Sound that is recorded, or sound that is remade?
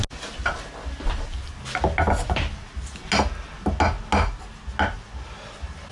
recorded